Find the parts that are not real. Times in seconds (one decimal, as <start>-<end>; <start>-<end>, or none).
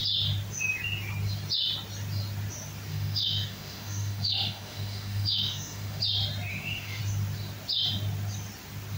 2.9-6.0; 6.5-7.0